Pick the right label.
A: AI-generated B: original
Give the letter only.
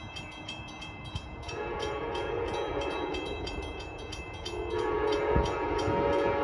A